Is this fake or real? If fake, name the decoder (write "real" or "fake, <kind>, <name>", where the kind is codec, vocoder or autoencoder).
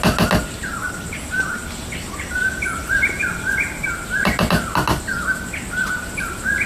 real